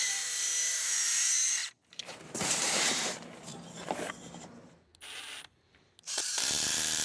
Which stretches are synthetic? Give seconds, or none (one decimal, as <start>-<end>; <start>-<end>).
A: 0.0-4.9; 5.5-7.0